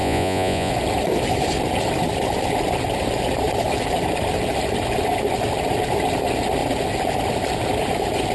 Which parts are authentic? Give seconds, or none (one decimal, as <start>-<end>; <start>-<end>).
0.7-8.3